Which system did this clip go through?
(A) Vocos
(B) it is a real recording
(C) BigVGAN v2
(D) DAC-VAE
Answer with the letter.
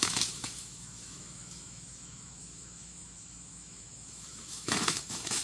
D